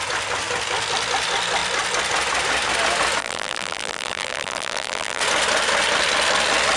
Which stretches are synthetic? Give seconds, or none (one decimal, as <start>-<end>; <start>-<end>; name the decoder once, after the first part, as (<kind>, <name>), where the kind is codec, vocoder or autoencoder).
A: 3.2-5.2 (vocoder, BigVGAN v2)